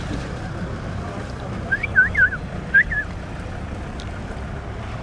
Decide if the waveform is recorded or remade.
remade